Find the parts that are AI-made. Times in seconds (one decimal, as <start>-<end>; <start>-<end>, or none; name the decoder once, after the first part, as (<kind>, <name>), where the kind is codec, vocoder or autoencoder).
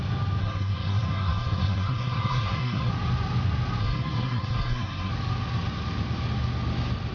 0.4-2.9 (codec, SNAC); 3.8-5.1